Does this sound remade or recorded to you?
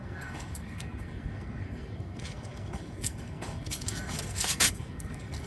remade